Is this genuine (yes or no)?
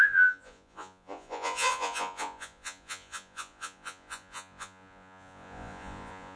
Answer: no